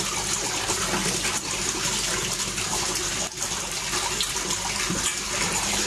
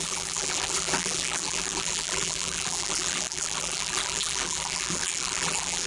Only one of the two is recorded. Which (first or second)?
first